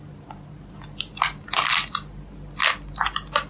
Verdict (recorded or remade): recorded